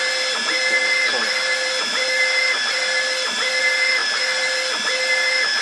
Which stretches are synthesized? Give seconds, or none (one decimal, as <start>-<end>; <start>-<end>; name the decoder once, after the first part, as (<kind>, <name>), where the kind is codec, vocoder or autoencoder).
none